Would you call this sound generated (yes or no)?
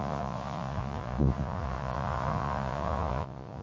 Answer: yes